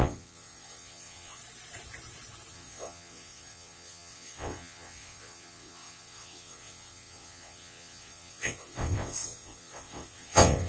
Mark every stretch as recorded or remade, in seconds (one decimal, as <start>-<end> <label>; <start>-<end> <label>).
0.0-1.4 remade; 1.4-2.5 recorded; 2.5-10.7 remade